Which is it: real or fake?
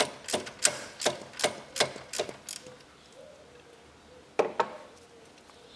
real